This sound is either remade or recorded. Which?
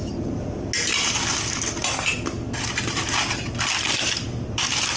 recorded